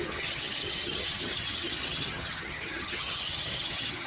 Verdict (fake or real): fake